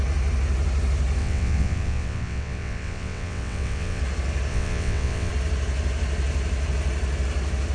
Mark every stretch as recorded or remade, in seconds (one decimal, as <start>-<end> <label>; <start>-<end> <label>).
0.0-1.2 recorded; 1.2-4.0 remade; 4.0-4.5 recorded; 4.5-5.3 remade; 5.3-7.7 recorded